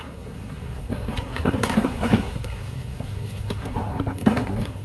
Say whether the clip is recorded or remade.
remade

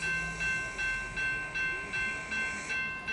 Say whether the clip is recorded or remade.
recorded